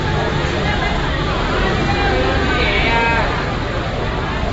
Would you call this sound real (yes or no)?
yes